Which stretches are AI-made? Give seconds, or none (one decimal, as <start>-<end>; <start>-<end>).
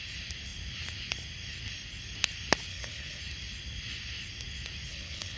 2.7-3.2; 4.9-5.4